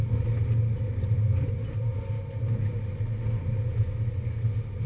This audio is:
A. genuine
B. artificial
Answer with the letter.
A